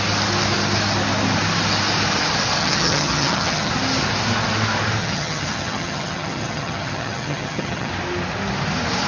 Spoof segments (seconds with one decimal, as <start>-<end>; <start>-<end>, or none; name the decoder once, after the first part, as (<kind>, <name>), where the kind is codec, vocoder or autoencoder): 2.6-3.7 (vocoder, HiFi-GAN); 5.0-7.9